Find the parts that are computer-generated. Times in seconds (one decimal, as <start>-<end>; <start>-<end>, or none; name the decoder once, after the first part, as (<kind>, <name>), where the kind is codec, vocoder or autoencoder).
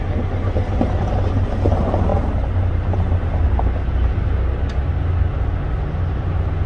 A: none